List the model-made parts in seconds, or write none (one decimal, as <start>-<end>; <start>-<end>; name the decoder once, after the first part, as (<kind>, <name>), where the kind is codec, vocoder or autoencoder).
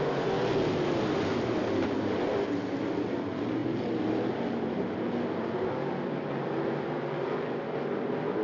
3.6-5.7 (vocoder, BigVGAN v2)